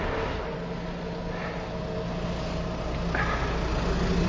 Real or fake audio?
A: real